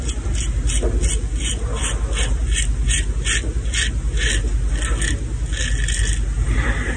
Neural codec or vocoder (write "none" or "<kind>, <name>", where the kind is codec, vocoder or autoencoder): none